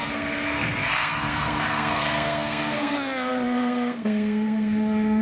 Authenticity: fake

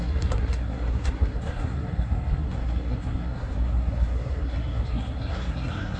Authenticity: fake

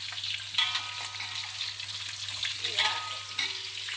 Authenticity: real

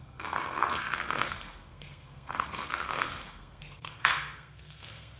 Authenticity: fake